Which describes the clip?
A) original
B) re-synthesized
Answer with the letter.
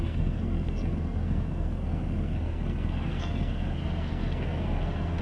B